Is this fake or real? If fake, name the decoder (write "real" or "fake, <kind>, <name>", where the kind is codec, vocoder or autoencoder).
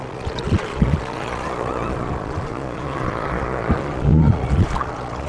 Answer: fake, vocoder, Vocos